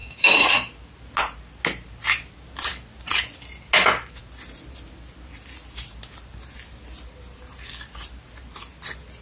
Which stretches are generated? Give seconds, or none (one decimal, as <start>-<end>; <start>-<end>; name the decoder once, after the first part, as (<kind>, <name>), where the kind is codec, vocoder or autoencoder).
0.0-0.5 (codec, DAC)